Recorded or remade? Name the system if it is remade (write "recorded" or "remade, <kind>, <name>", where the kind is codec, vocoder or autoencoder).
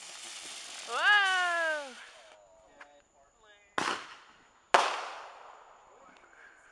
recorded